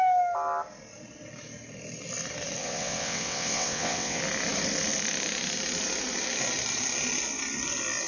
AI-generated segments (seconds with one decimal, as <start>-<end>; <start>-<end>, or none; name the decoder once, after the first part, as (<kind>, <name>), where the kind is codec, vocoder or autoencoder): 2.6-4.2 (vocoder, WaveNeXt)